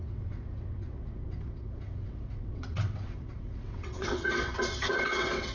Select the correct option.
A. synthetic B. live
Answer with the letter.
A